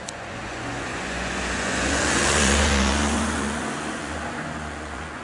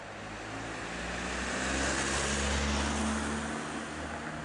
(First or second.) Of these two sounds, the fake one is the first